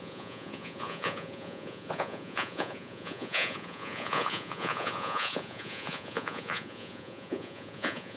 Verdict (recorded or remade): remade